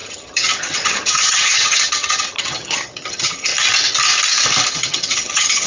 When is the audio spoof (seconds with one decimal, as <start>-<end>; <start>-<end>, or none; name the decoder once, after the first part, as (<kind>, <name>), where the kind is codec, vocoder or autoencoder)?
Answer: 0.0-3.5 (vocoder, HiFi-GAN); 4.7-5.7